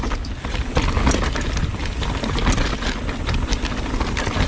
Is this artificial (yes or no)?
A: no